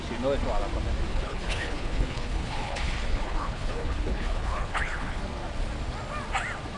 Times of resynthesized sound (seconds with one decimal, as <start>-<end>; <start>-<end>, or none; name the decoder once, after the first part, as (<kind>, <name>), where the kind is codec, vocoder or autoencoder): 1.1-5.2 (codec, HILCodec)